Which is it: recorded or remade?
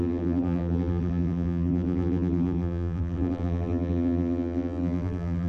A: remade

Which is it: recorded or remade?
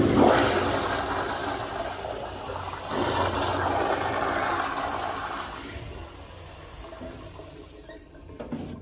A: recorded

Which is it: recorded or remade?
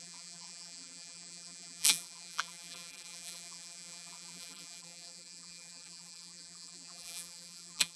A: remade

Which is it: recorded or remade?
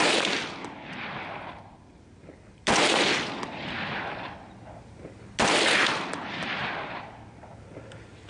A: recorded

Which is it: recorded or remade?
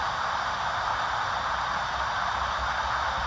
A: recorded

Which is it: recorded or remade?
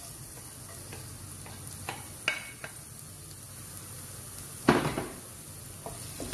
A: recorded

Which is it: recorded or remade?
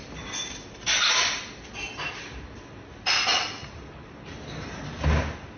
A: recorded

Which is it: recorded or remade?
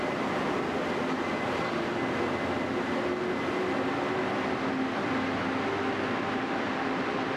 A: recorded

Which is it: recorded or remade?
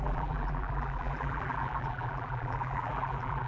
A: remade